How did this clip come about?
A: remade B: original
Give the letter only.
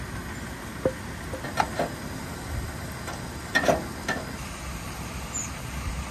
B